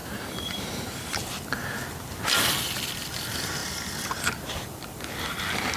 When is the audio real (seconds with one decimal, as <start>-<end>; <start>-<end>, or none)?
1.3-5.8